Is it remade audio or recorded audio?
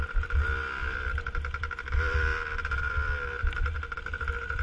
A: recorded